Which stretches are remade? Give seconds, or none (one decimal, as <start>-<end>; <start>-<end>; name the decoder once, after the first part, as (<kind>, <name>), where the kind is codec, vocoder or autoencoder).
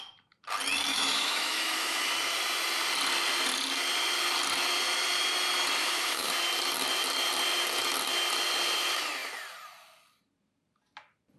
0.9-2.1 (autoencoder, DAC-VAE); 5.8-6.3